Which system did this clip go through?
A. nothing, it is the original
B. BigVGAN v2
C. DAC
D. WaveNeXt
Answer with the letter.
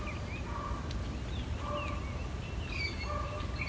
A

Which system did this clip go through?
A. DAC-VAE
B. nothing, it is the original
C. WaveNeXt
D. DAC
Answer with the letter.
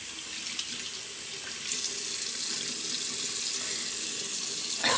B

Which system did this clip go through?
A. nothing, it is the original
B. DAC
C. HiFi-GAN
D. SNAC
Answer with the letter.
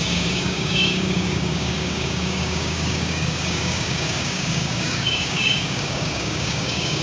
B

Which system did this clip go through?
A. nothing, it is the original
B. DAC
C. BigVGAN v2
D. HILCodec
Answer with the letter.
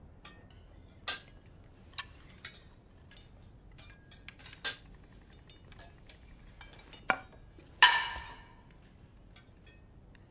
A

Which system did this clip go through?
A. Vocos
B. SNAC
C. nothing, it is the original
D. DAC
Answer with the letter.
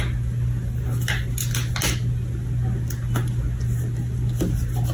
C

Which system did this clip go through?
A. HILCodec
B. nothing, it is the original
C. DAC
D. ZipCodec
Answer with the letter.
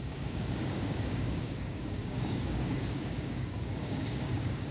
C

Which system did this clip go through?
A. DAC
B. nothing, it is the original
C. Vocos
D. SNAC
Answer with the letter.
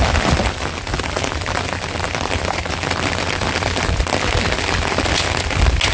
B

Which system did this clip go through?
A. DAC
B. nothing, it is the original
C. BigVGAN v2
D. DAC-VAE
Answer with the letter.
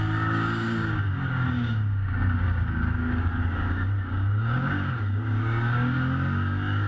A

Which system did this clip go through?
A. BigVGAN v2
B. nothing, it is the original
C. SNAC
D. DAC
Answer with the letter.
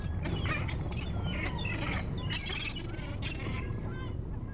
B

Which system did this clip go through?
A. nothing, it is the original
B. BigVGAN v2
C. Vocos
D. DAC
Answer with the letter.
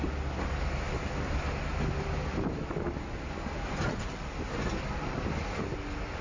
A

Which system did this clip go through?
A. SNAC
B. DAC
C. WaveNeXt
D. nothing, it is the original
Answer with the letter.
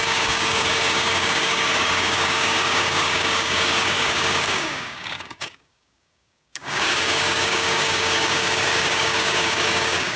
B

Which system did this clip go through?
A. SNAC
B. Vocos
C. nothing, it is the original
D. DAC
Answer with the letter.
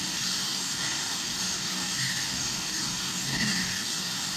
D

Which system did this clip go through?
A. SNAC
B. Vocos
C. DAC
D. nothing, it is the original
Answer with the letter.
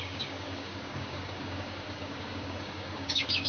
C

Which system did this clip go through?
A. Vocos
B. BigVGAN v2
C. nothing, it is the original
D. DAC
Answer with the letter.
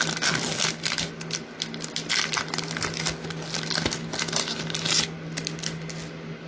C